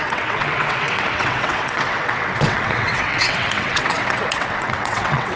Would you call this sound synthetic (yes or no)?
yes